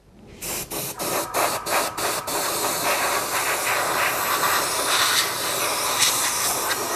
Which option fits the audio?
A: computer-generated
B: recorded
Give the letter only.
A